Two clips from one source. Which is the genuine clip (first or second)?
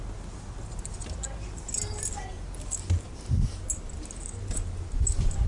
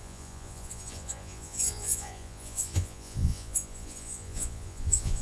first